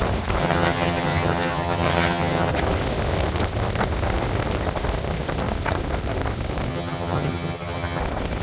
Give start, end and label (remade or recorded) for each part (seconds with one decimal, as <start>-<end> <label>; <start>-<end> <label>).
0.0-0.4 recorded; 0.4-2.5 remade; 2.5-6.7 recorded; 6.7-8.0 remade; 8.0-8.4 recorded